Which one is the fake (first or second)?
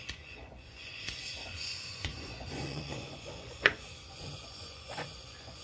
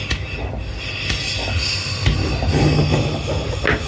first